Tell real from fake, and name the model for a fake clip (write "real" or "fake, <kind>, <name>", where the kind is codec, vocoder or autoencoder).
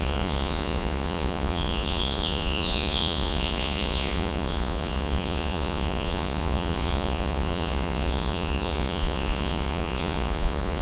fake, vocoder, Vocos